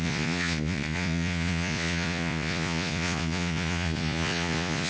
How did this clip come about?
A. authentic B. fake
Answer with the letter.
B